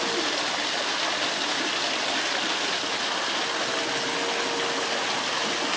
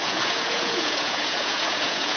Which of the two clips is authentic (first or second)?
first